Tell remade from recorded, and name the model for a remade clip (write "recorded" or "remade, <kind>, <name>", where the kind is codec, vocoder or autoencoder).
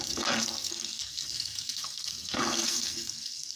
remade, codec, SNAC